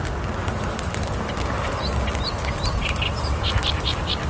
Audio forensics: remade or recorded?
recorded